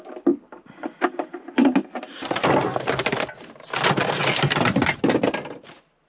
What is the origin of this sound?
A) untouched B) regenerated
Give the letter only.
A